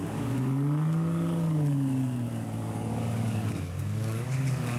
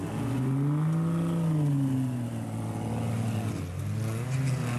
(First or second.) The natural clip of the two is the second